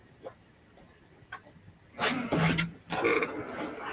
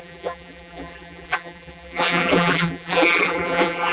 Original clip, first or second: first